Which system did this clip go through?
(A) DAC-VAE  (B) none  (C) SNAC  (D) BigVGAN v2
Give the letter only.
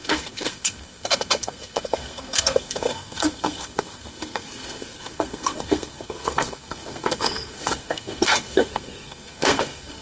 C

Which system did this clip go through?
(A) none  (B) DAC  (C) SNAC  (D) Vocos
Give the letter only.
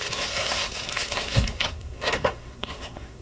C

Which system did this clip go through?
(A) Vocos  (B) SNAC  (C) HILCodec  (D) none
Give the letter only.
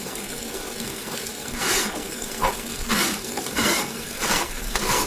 B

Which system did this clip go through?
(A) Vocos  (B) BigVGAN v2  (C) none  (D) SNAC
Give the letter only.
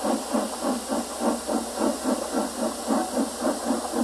C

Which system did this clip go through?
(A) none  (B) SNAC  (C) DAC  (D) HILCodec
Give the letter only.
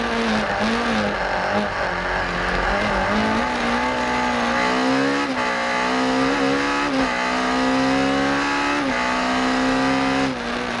A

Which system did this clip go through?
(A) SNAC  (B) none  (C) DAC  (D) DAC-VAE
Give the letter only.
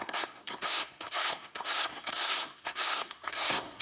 A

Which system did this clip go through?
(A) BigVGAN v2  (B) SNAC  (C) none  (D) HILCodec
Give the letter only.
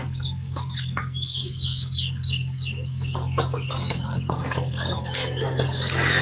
B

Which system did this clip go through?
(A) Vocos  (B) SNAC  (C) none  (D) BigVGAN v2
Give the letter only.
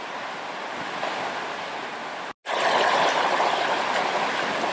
C